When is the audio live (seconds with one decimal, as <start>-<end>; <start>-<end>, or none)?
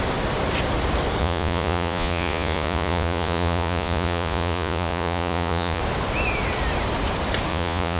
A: 0.0-1.2; 5.8-7.5